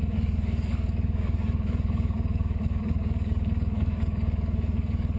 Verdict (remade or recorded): remade